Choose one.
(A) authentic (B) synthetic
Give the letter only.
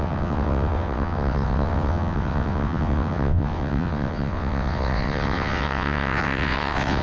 B